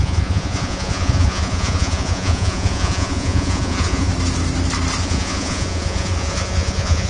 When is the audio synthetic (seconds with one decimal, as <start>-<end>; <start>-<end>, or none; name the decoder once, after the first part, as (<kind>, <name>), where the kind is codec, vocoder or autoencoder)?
0.0-4.1 (vocoder, Vocos); 5.0-7.1